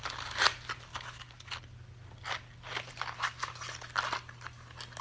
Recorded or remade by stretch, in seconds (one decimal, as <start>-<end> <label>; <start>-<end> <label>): 0.0-5.0 recorded